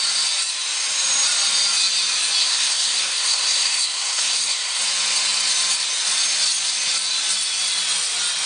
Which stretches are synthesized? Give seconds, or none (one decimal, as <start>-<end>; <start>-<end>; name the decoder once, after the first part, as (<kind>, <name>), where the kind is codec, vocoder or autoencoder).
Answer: 2.4-4.8 (codec, SNAC)